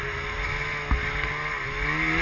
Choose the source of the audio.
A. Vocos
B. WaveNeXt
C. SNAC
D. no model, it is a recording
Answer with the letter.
D